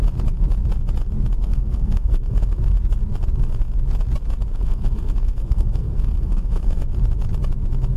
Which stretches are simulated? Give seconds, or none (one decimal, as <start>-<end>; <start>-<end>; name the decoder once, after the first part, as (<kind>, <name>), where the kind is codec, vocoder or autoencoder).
1.4-2.6 (codec, SNAC); 4.5-6.9